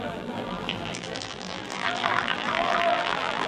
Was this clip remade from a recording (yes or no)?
yes